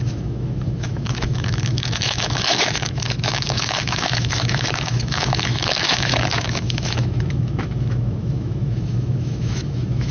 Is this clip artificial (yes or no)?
yes